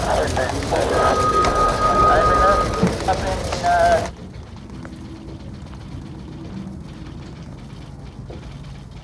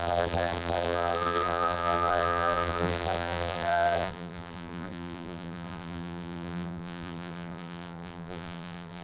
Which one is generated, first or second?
second